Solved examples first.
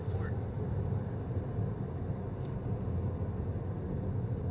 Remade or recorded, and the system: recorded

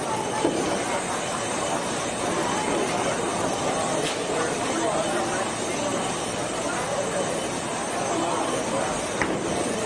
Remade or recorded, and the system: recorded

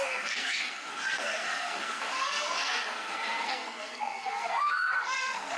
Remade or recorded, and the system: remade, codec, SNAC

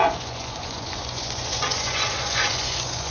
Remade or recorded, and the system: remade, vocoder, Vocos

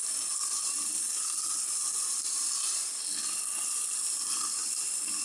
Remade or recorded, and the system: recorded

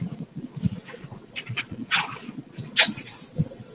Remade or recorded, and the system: remade, vocoder, Vocos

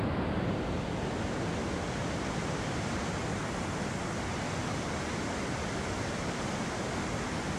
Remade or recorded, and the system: recorded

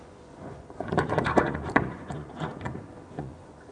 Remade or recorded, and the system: remade, vocoder, Vocos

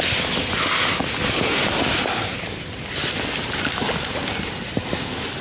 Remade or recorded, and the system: recorded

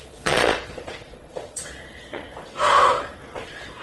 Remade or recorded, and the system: remade, vocoder, Vocos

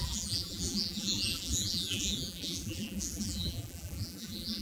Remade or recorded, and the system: remade, vocoder, BigVGAN v2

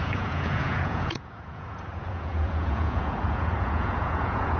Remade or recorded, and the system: remade, vocoder, Vocos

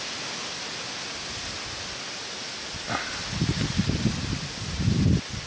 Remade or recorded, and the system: recorded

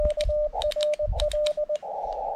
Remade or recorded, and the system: recorded